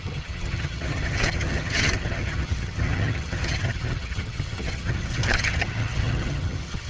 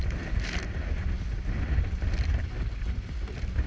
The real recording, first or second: second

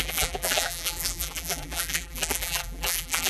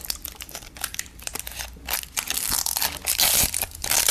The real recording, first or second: second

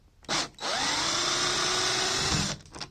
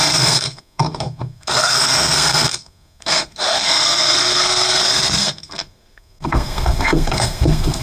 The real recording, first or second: first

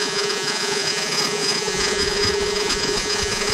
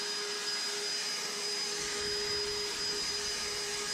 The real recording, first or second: second